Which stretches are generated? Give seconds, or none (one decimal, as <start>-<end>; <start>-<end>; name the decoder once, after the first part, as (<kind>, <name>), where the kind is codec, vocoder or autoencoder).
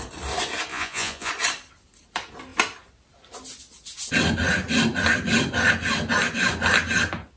0.7-1.3 (vocoder, Vocos)